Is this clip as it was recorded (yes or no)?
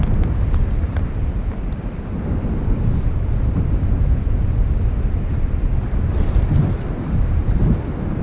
no